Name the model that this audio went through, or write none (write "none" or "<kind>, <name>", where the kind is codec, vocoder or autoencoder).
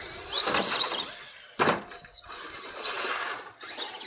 none